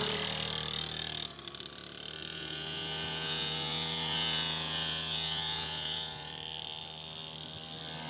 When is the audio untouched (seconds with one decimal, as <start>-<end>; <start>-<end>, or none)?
0.0-2.3; 6.3-8.1